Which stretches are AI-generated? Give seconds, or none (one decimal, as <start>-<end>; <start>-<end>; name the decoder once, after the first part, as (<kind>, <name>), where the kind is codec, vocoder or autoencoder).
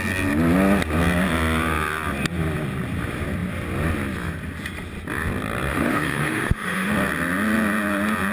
5.7-6.9 (autoencoder, DAC-VAE)